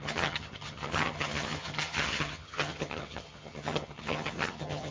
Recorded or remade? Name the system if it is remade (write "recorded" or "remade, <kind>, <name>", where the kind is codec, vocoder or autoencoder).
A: remade, vocoder, HiFi-GAN